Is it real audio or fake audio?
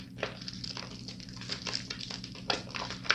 real